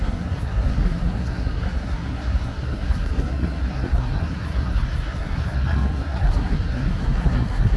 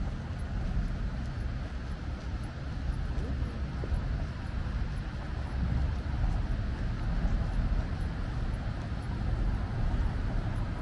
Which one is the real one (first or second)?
second